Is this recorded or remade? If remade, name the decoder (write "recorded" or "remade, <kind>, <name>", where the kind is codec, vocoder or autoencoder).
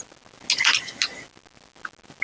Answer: recorded